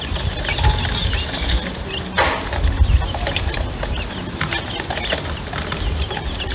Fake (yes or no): no